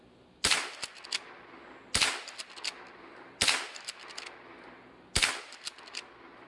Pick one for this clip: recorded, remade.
recorded